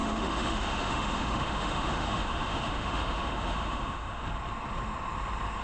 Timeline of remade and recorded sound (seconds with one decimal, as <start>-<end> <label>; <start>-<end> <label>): 0.0-4.2 remade; 4.2-5.6 recorded